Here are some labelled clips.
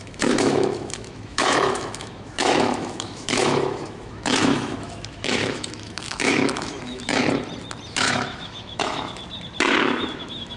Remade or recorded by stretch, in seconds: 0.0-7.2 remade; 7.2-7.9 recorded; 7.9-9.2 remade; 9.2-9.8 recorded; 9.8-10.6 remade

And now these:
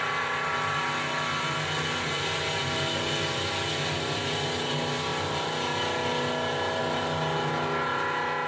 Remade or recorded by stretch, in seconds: 0.0-8.5 recorded